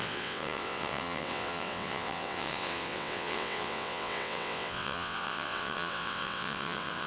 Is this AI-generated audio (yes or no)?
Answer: yes